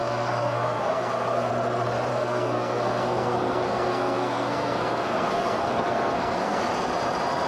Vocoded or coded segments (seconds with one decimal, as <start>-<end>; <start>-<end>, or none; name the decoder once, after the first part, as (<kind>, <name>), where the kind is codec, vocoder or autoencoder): 0.0-1.5 (codec, SNAC); 2.1-6.6